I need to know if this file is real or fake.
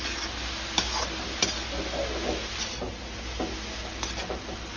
real